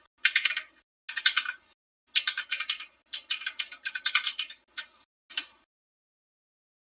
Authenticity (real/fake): real